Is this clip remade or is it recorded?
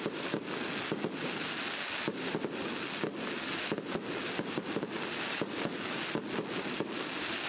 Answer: recorded